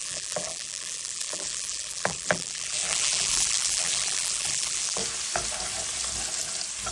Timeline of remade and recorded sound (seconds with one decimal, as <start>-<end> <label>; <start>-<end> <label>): 0.0-5.0 remade; 5.0-6.9 recorded